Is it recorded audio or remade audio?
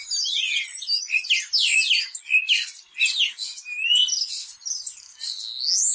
recorded